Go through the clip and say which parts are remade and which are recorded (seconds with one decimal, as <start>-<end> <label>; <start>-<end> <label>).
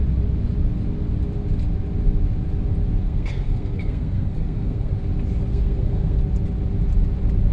0.0-3.0 recorded; 3.0-4.9 remade; 4.9-5.5 recorded; 5.5-6.2 remade; 6.2-7.5 recorded